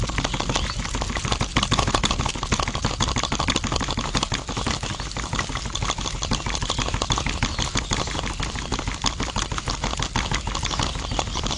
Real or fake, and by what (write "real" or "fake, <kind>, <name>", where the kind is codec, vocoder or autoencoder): real